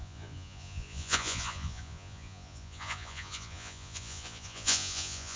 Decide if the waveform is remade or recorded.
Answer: remade